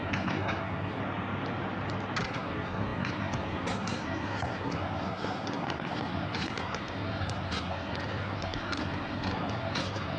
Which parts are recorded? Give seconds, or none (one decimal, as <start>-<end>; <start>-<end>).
1.0-2.2